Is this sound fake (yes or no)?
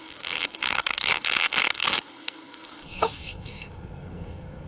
yes